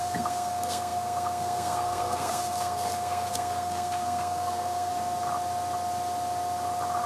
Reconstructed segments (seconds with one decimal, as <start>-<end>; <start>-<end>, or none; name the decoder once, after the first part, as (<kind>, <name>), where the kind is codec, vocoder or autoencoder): 0.0-4.9 (codec, SNAC)